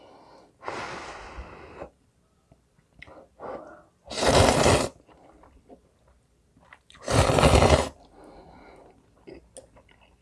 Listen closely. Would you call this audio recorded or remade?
recorded